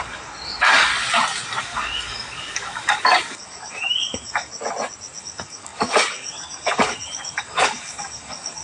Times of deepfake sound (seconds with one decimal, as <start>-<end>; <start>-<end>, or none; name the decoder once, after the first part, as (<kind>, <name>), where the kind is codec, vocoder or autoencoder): 0.0-0.9 (codec, DAC); 1.6-4.5; 5.2-8.6